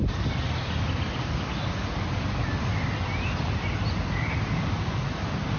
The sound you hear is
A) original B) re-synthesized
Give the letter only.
A